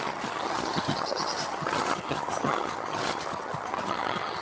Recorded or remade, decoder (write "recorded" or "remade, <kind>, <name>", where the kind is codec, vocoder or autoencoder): remade, vocoder, HiFi-GAN